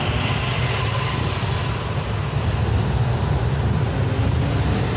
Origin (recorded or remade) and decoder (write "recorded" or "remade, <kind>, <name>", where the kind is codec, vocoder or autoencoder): recorded